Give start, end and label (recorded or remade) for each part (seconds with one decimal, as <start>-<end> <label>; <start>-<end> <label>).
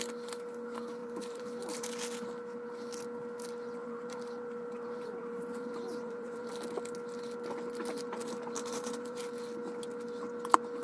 0.0-1.0 recorded; 1.0-1.9 remade; 1.9-3.8 recorded; 3.8-6.5 remade; 6.5-8.2 recorded; 8.2-9.2 remade; 9.2-10.8 recorded